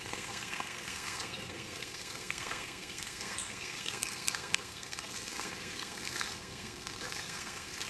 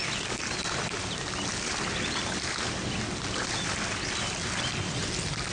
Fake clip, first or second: first